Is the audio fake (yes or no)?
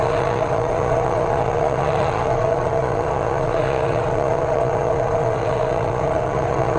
yes